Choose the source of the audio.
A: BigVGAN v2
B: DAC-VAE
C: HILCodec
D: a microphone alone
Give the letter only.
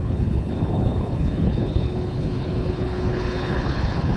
C